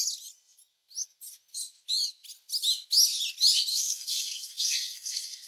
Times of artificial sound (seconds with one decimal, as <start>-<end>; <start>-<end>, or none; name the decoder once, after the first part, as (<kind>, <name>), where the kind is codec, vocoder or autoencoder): 3.7-5.5 (codec, SNAC)